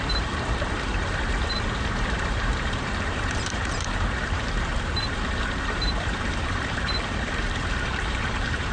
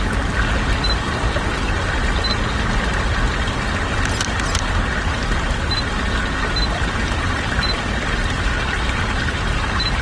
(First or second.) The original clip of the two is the second